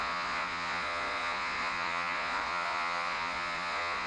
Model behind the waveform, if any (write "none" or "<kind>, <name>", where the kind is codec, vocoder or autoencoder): vocoder, Vocos